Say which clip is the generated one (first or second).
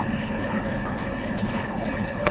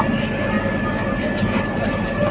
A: first